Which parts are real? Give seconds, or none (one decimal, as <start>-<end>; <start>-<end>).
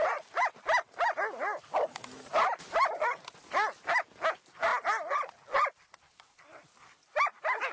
0.0-7.7